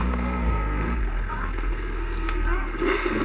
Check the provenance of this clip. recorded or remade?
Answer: remade